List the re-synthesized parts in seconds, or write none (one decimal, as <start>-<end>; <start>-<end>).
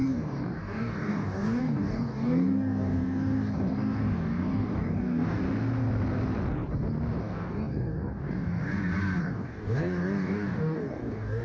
0.0-5.4; 7.2-8.7; 9.2-11.4